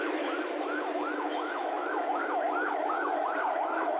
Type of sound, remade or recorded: remade